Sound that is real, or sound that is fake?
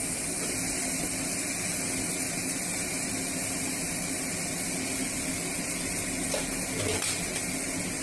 real